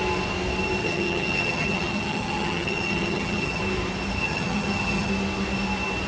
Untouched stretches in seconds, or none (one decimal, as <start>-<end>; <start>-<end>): 0.0-0.8; 3.6-4.2; 5.1-6.1